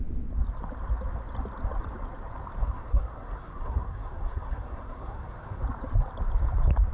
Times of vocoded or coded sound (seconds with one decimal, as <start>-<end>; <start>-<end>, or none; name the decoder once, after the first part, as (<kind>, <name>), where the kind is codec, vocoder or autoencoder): 2.6-5.6 (codec, SNAC)